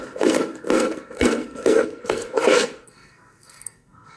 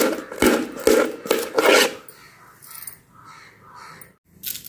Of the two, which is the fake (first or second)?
first